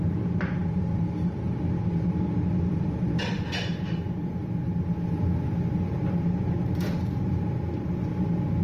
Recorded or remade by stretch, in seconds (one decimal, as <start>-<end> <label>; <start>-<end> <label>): 0.0-8.6 recorded

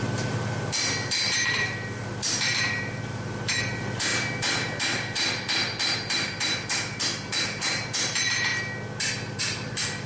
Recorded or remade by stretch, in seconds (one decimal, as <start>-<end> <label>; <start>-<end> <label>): 0.0-8.5 remade; 8.5-9.4 recorded; 9.4-10.1 remade

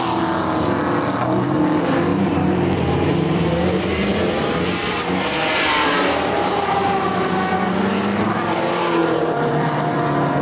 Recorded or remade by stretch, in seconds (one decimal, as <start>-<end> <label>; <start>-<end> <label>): 0.0-2.1 recorded; 2.1-3.8 remade; 3.8-5.4 recorded; 5.4-7.2 remade; 7.2-9.0 recorded; 9.0-9.5 remade; 9.5-10.4 recorded

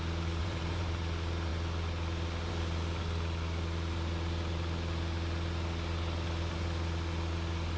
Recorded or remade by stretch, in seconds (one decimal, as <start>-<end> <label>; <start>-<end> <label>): 0.0-0.4 recorded; 0.4-0.9 remade; 0.9-7.8 recorded

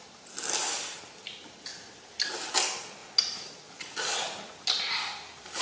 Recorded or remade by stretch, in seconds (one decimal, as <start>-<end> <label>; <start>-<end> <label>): 0.0-5.6 recorded